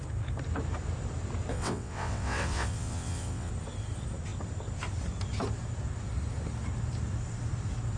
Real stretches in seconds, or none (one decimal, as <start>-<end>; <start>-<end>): 0.0-1.5; 3.5-8.0